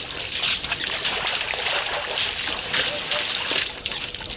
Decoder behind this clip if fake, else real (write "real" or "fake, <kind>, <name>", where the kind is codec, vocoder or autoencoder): real